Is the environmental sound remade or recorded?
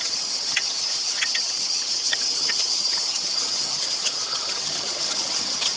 remade